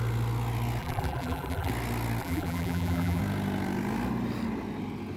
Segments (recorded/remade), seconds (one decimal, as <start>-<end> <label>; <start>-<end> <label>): 0.0-0.8 recorded; 0.8-1.7 remade; 1.7-2.2 recorded; 2.2-3.2 remade; 3.2-5.2 recorded